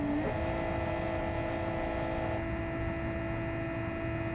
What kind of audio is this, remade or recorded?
recorded